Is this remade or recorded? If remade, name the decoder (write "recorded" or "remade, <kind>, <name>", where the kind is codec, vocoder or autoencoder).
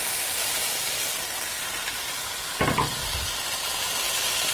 recorded